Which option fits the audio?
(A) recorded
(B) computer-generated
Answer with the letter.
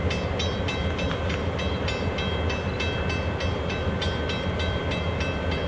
A